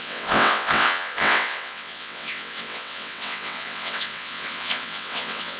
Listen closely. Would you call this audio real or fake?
fake